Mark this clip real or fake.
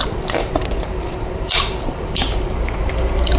fake